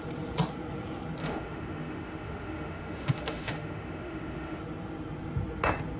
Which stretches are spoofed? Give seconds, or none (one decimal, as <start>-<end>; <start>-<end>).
1.2-4.6